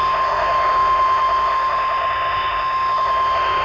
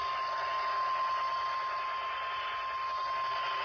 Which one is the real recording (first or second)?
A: second